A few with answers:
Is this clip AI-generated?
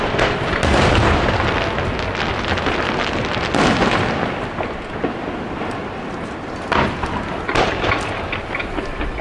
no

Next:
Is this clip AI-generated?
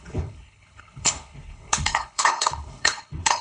yes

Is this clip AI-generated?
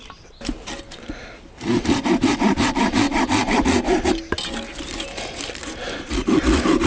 no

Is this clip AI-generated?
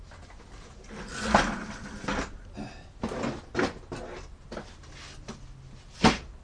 no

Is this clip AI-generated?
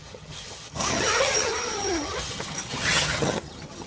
yes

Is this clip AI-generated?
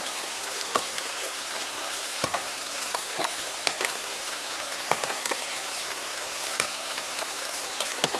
yes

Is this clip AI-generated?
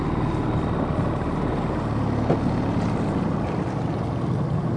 no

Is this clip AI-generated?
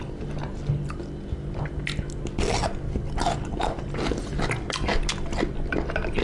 no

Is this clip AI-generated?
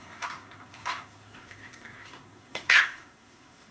yes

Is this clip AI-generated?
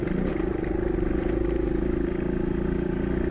no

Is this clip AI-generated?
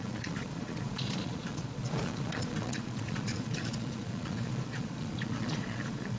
yes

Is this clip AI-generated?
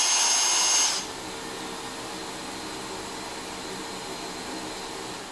no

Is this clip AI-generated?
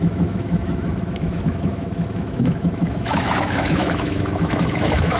yes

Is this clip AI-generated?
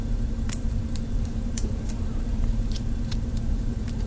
yes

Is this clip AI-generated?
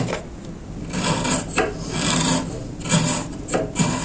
no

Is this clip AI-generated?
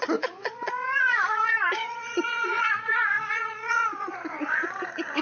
yes